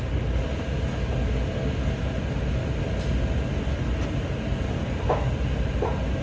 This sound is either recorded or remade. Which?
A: recorded